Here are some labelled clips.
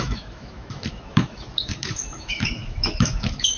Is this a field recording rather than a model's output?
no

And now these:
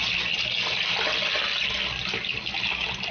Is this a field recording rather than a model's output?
yes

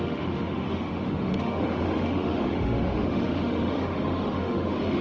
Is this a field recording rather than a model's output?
no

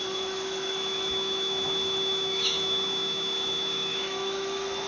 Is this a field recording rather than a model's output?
no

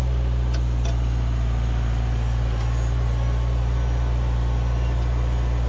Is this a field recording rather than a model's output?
yes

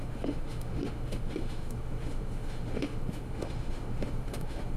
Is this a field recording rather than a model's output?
no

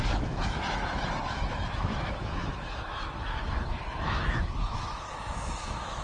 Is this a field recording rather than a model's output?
no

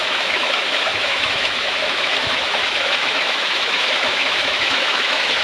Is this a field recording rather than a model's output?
no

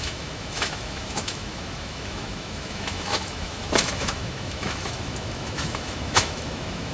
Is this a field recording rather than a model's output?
no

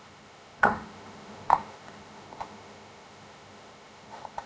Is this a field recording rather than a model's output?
no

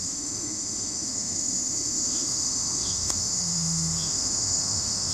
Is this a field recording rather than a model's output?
no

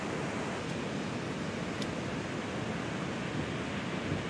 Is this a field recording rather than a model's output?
yes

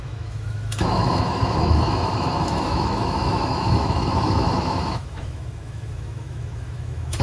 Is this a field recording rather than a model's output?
no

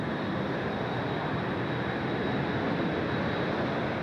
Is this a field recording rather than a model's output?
yes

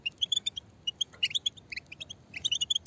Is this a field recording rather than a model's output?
yes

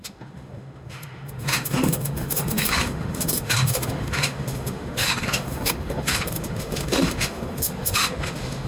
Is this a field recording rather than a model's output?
no